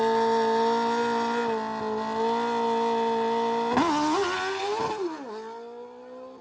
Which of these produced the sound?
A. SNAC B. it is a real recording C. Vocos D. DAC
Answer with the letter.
B